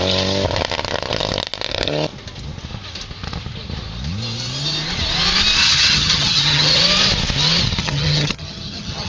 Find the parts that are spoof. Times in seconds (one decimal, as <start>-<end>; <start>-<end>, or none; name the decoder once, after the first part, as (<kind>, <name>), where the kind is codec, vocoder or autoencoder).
5.6-6.8 (vocoder, HiFi-GAN); 7.8-9.1